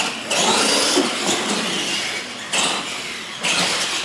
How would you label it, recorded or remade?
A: recorded